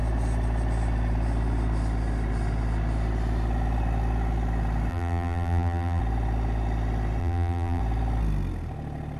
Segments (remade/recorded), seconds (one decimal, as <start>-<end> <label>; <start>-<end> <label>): 0.0-4.9 recorded; 4.9-6.0 remade; 6.0-7.2 recorded; 7.2-7.8 remade; 7.8-9.2 recorded